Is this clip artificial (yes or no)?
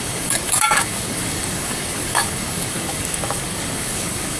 yes